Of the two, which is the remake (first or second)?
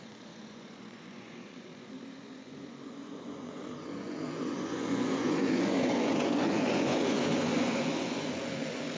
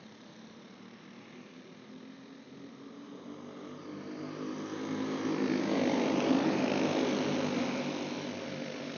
first